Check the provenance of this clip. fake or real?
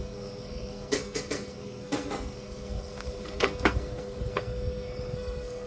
fake